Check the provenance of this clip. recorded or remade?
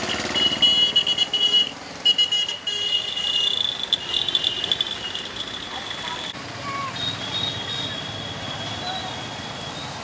recorded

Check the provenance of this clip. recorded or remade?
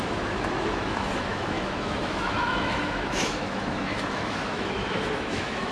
remade